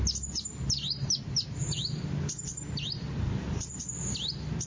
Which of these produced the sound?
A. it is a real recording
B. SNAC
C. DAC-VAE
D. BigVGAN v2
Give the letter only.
A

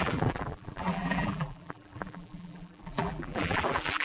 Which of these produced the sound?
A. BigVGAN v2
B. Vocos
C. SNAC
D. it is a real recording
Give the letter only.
A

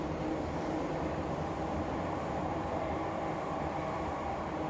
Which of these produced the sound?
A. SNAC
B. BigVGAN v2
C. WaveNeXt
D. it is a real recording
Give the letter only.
B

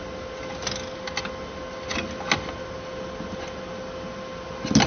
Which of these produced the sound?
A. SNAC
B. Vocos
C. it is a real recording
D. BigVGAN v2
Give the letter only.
C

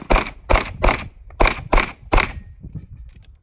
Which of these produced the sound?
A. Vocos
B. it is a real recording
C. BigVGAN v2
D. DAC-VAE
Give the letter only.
C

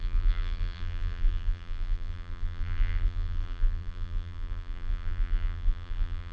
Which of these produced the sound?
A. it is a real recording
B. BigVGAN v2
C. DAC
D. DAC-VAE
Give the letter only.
B